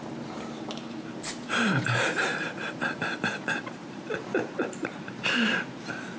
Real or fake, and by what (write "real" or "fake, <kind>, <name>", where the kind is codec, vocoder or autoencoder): fake, vocoder, BigVGAN v2